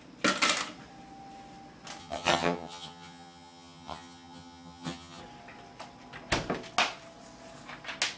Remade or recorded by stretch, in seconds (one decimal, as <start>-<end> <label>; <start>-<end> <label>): 0.0-2.0 recorded; 2.0-5.2 remade; 5.2-8.2 recorded